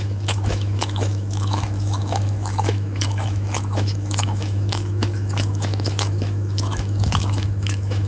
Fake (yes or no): yes